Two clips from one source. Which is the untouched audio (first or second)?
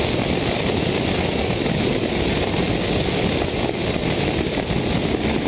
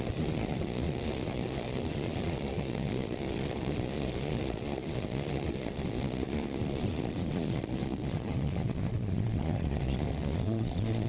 first